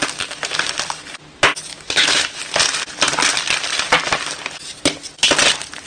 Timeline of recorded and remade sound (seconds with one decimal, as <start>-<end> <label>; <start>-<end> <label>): 0.0-1.7 recorded; 1.7-2.4 remade; 2.4-5.9 recorded

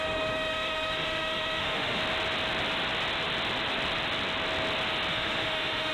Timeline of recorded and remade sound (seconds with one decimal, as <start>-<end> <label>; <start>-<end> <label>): 0.0-2.0 remade; 2.0-5.1 recorded; 5.1-5.9 remade

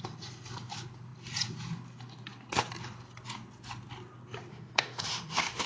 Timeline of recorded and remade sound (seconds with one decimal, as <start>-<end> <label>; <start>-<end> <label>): 0.0-4.5 recorded; 4.5-5.7 remade

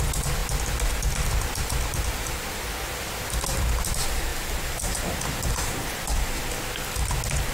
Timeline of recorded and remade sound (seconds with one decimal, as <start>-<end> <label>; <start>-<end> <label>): 0.0-7.5 recorded